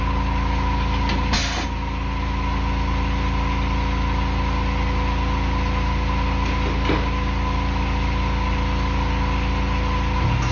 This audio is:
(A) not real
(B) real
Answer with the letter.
B